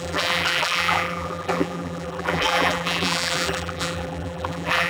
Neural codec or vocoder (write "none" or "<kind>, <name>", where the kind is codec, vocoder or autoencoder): vocoder, BigVGAN v2